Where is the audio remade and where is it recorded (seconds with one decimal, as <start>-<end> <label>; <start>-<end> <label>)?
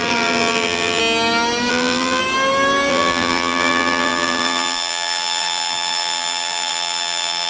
0.0-1.0 remade; 1.0-1.7 recorded; 1.7-2.2 remade; 2.2-2.9 recorded; 2.9-7.5 remade